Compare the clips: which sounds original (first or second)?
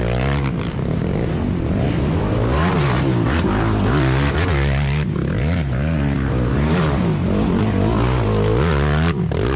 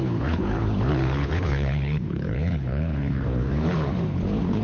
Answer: first